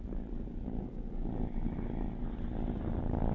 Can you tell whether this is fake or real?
real